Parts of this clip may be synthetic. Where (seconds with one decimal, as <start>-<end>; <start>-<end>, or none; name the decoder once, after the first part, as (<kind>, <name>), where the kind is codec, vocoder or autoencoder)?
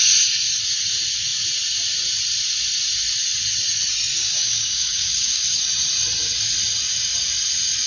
4.1-5.6 (codec, DAC)